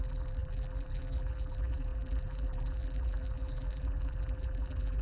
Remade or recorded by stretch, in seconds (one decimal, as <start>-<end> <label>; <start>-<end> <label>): 0.0-5.0 remade